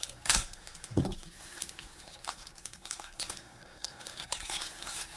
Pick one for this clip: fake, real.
fake